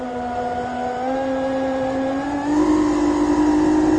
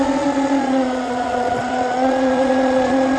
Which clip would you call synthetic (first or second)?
second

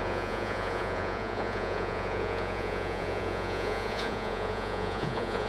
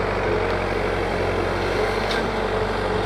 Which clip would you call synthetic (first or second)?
first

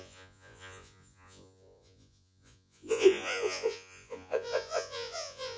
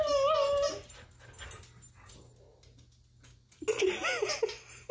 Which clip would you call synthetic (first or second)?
first